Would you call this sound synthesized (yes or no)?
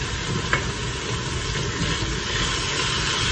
no